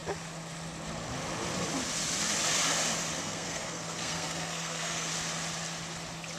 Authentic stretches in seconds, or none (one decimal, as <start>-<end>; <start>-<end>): 0.0-3.2; 5.1-6.4